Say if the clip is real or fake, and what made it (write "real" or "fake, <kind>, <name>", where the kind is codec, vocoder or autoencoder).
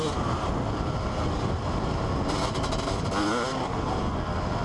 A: real